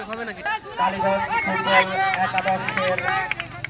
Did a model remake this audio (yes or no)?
no